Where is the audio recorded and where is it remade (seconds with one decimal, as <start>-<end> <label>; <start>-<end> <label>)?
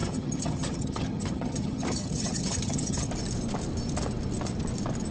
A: 0.0-3.1 remade; 3.1-5.1 recorded